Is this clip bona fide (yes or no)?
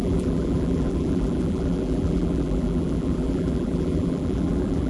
no